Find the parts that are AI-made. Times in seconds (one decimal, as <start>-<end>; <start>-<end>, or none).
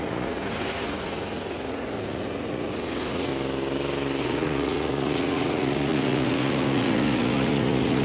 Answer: 0.0-3.3; 4.2-8.0